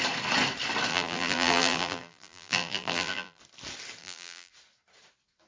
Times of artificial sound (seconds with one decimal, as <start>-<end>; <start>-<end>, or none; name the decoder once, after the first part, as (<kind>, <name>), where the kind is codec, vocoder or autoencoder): 0.9-3.4 (vocoder, BigVGAN v2); 4.0-4.5